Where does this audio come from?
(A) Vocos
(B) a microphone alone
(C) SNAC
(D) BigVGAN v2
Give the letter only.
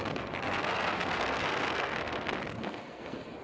C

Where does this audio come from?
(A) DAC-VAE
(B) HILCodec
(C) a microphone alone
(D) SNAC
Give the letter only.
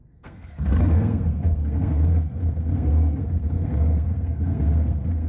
D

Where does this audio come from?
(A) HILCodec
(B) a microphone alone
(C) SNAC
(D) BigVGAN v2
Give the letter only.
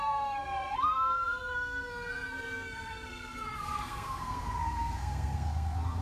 C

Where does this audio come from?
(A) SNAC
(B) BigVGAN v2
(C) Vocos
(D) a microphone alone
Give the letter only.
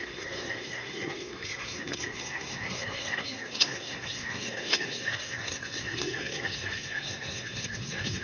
A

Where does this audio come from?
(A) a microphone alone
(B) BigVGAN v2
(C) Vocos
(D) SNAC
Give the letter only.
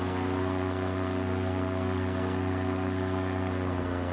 D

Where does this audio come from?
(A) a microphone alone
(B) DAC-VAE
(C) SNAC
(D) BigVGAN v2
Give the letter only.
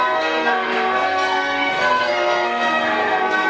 C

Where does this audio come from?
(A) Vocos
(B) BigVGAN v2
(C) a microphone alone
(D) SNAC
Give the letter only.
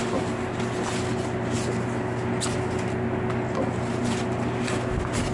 C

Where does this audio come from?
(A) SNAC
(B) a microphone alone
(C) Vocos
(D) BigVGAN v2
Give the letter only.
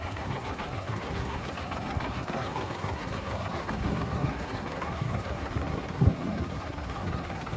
A